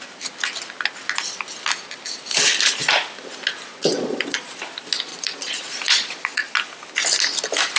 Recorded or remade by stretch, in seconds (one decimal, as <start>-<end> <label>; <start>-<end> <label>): 0.0-3.7 recorded; 3.7-4.6 remade; 4.6-5.1 recorded; 5.1-6.5 remade; 6.5-7.8 recorded